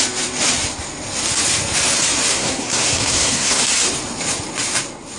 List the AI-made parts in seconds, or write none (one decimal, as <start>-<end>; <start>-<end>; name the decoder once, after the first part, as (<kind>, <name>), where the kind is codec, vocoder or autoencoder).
2.3-3.6 (codec, SNAC)